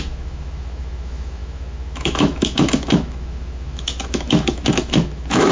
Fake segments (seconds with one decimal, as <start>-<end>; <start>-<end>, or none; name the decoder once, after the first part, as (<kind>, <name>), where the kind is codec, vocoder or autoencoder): 0.0-5.5 (autoencoder, DAC-VAE)